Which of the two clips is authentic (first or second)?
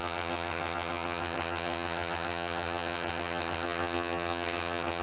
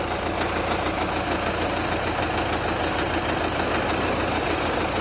second